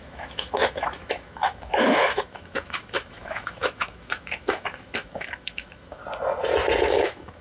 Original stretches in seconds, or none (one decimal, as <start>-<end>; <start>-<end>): 6.0-6.8